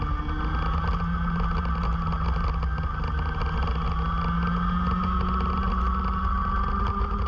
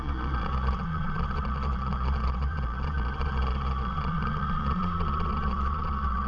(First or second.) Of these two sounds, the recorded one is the first